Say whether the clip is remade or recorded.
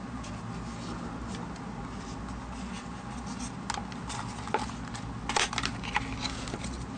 recorded